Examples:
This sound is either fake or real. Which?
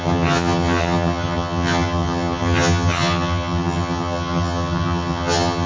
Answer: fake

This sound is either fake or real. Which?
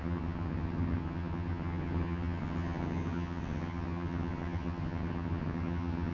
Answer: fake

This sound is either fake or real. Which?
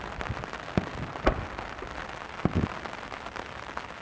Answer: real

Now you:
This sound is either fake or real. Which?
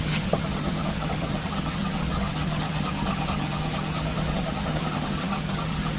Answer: fake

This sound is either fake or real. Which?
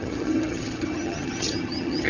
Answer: fake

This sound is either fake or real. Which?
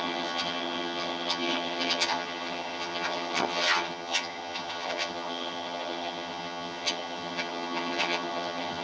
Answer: fake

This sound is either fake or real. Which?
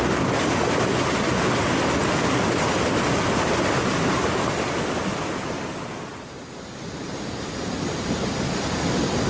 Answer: real